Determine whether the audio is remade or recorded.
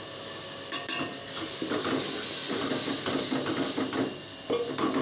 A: recorded